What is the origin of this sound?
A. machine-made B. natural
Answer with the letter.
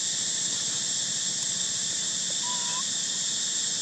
B